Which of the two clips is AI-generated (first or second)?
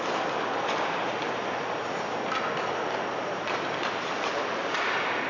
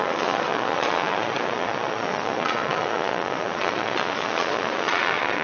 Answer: second